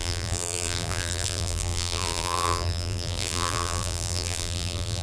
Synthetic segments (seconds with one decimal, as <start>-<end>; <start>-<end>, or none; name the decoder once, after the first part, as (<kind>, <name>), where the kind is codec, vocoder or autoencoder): 0.0-5.0 (vocoder, BigVGAN v2)